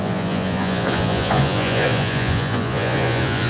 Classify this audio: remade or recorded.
remade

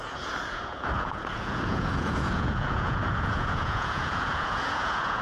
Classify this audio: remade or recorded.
remade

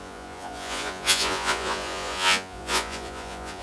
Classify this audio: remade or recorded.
remade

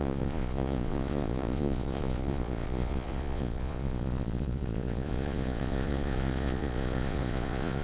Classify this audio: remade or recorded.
remade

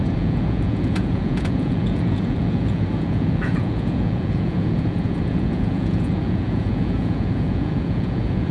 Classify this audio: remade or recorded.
remade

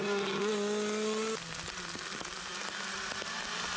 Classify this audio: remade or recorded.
recorded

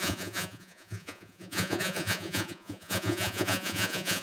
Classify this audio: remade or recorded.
remade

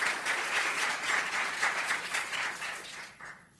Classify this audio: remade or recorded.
remade